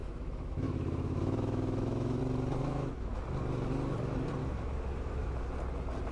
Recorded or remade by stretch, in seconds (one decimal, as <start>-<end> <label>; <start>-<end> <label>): 0.0-2.2 remade; 2.2-2.6 recorded; 2.6-3.2 remade; 3.2-4.4 recorded; 4.4-5.4 remade; 5.4-6.1 recorded